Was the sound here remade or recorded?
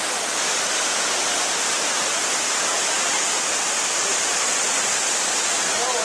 recorded